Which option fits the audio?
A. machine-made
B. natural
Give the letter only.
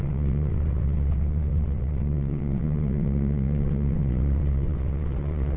A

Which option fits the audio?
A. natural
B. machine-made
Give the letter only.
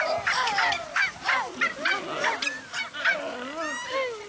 A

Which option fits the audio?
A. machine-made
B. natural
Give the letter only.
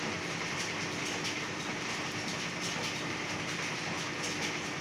B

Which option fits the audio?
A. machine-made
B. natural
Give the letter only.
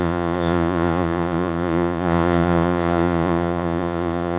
A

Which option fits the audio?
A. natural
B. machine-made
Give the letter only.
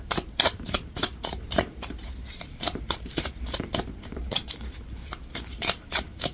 B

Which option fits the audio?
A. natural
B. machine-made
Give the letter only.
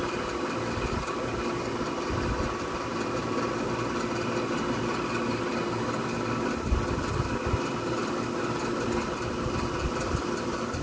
A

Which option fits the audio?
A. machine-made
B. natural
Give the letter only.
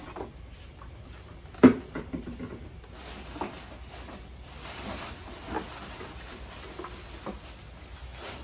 B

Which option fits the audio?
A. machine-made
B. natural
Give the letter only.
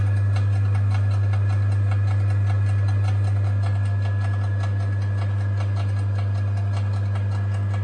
B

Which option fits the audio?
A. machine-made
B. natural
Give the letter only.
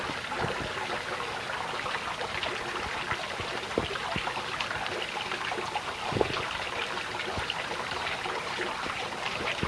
B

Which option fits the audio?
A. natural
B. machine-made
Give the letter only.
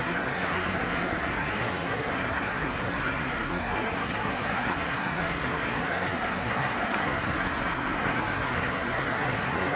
B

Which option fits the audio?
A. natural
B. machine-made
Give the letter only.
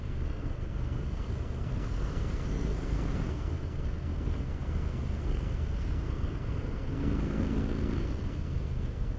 B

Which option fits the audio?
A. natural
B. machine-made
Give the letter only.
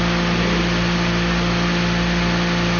A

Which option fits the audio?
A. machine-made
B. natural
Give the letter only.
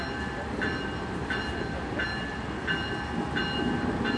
B